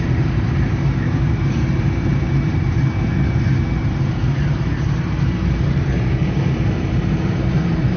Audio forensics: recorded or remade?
remade